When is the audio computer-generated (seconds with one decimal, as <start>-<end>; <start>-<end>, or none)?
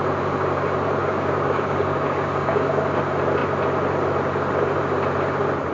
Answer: 1.0-2.8